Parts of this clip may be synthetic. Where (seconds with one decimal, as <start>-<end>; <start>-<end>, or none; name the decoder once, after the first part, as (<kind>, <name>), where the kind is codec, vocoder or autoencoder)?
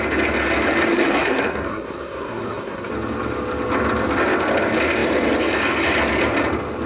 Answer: 0.9-2.9 (codec, SNAC)